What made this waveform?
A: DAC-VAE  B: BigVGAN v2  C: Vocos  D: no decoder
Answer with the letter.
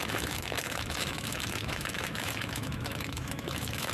A